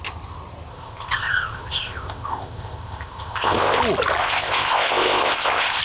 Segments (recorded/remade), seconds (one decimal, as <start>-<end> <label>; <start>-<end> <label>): 0.0-0.7 recorded; 0.7-3.8 remade; 3.8-4.2 recorded; 4.2-5.8 remade